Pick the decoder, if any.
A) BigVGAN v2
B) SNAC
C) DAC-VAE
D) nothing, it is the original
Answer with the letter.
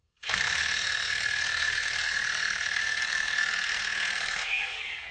B